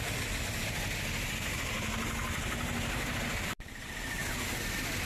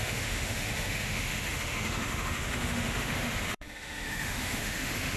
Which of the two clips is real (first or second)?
first